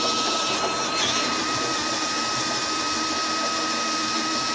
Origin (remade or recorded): recorded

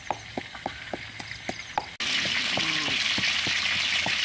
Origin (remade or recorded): recorded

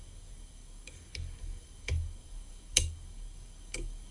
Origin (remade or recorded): remade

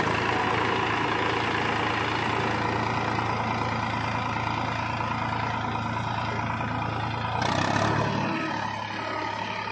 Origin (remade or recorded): recorded